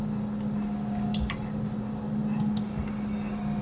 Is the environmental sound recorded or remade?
recorded